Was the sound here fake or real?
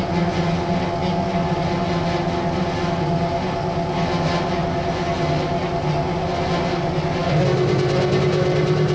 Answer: real